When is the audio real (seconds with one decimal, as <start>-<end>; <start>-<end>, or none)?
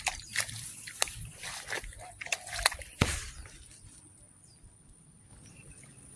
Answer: 3.4-4.4; 5.3-6.2